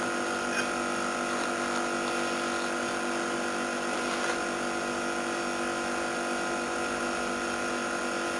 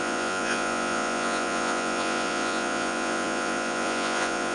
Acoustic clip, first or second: first